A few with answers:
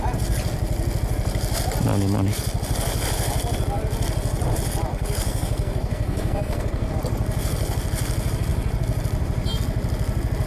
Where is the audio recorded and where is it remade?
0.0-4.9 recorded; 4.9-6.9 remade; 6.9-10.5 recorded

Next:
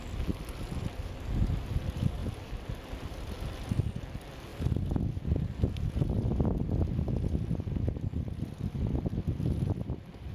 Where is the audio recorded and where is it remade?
0.0-10.3 recorded

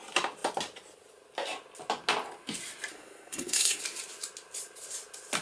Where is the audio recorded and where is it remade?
0.0-2.9 recorded; 2.9-3.8 remade; 3.8-5.4 recorded

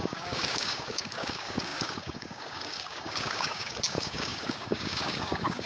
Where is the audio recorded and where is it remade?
0.0-5.7 remade